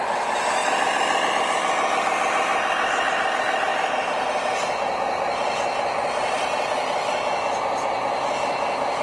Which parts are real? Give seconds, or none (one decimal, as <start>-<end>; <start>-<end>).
0.0-9.0